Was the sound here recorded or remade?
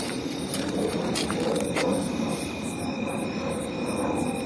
remade